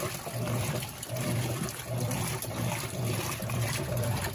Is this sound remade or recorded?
remade